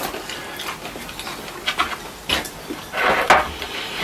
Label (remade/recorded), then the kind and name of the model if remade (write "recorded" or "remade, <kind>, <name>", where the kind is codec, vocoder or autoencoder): recorded